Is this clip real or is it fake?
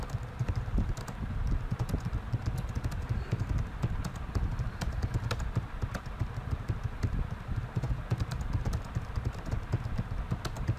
real